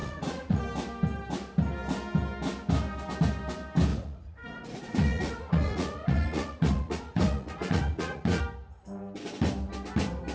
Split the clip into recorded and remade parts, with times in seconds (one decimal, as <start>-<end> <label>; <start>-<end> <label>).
0.0-0.6 remade; 0.6-3.9 recorded; 3.9-8.4 remade; 8.4-10.3 recorded